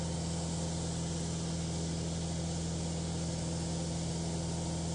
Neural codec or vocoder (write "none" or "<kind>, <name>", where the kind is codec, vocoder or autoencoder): none